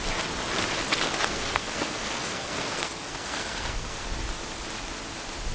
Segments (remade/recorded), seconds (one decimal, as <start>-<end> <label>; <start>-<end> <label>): 0.0-0.8 recorded; 0.8-4.1 remade; 4.1-5.5 recorded